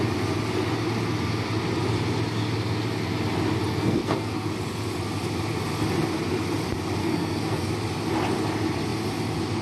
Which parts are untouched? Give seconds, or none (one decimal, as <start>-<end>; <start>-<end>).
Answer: 0.0-3.7; 4.5-7.0; 7.7-9.6